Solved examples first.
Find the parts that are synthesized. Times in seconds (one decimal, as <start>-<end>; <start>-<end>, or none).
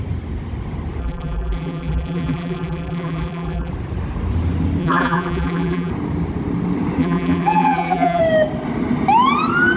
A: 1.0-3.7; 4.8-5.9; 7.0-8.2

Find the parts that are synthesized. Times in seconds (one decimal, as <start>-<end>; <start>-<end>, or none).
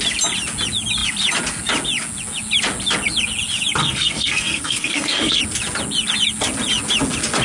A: 3.8-5.4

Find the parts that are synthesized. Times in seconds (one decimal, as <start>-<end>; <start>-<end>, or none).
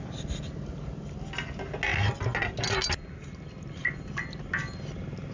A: none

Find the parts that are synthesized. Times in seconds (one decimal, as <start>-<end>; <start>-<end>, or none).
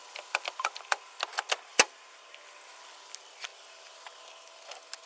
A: none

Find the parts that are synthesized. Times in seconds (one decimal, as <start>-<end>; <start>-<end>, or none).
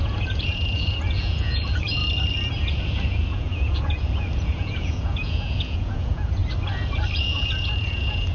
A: 0.0-2.0; 2.6-6.4; 7.2-8.3